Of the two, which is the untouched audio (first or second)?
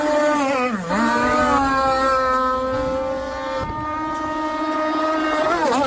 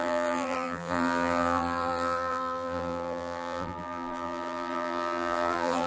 first